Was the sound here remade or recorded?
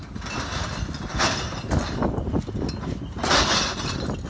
recorded